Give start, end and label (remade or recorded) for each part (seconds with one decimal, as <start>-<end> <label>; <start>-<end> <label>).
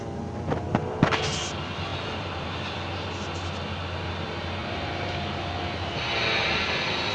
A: 0.0-1.9 recorded; 1.9-2.5 remade; 2.5-4.6 recorded; 4.6-5.4 remade; 5.4-7.1 recorded